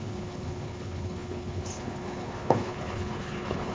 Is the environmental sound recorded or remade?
remade